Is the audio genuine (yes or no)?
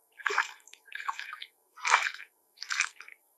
no